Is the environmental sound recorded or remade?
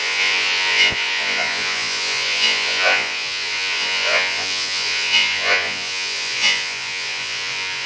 remade